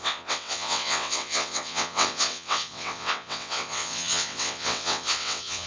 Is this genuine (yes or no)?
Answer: no